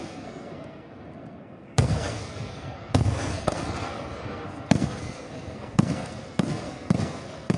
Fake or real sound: fake